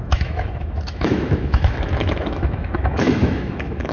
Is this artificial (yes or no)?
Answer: yes